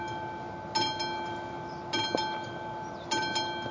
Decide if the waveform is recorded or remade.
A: recorded